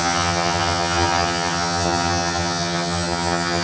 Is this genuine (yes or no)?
no